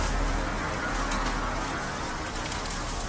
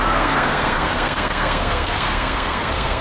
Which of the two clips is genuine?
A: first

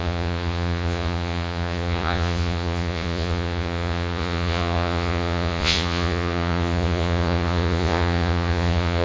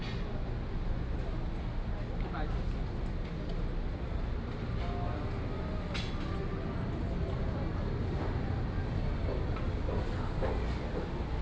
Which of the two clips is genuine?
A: second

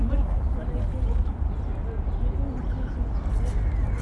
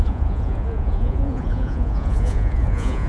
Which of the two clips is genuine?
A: first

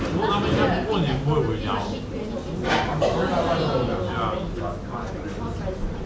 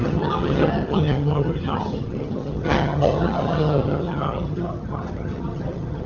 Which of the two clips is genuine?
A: first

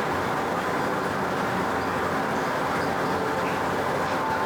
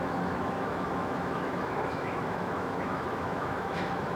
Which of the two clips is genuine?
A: first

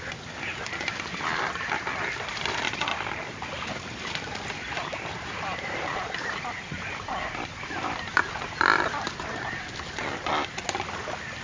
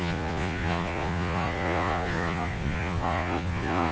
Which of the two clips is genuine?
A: first